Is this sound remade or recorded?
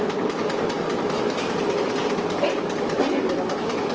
recorded